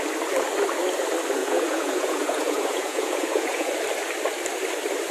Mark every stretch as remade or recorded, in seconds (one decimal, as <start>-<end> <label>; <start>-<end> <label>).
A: 0.0-1.4 recorded; 1.4-3.7 remade; 3.7-5.1 recorded